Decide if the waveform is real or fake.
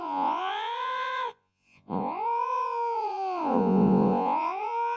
fake